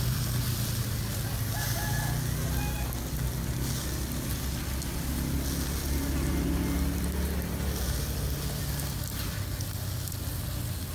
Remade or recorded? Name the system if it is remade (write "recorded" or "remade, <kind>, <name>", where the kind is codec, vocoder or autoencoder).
recorded